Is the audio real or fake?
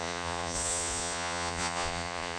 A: fake